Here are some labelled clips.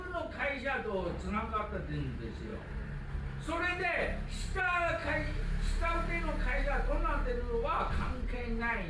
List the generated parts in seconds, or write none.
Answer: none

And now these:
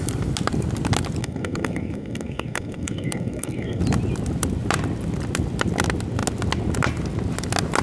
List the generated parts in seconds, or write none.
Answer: 1.2-3.8 (codec, SNAC)

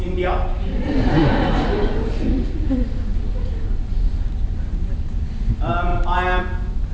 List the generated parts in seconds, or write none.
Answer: none

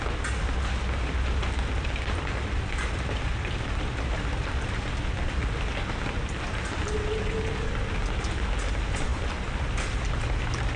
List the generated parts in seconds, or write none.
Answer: none

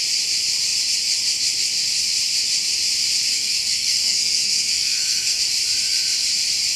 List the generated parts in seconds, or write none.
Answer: 3.3-5.4 (codec, SNAC)